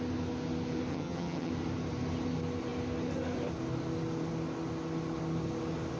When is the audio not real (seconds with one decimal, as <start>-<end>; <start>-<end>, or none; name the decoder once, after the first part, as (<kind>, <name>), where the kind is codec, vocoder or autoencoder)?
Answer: 0.9-1.5 (vocoder, HiFi-GAN)